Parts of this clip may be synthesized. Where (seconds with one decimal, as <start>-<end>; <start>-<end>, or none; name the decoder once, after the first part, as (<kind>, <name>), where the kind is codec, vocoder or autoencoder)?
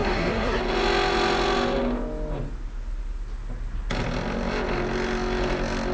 0.0-0.6 (codec, SNAC)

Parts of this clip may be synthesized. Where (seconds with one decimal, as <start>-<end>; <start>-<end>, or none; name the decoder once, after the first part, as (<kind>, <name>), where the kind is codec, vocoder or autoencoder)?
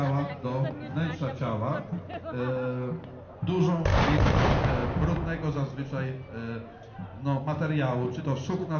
none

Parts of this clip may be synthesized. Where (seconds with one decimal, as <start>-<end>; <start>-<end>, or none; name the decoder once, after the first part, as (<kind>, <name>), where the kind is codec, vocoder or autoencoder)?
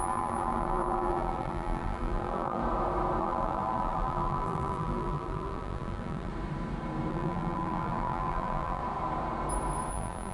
0.0-2.6 (vocoder, BigVGAN v2); 3.2-6.3; 7.1-8.8; 9.9-10.3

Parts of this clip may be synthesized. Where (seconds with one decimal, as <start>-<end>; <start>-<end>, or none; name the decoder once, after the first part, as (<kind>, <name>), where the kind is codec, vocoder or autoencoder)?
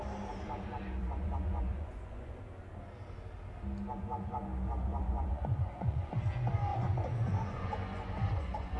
1.0-2.4 (vocoder, Vocos); 4.9-6.2; 6.7-8.8